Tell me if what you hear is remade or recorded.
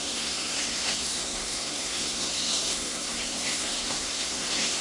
remade